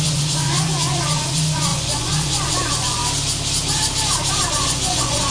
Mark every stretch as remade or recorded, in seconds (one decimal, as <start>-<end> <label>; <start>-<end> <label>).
0.0-3.0 remade; 3.0-4.5 recorded; 4.5-5.3 remade